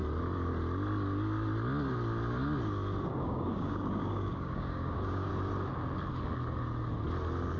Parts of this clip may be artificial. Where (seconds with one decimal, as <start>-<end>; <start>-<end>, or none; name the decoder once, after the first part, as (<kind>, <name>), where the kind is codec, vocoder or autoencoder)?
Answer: 3.1-5.3 (codec, DAC)